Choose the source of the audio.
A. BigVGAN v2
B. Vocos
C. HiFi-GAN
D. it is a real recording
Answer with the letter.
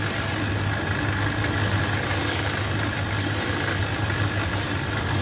D